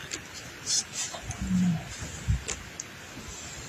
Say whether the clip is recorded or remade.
recorded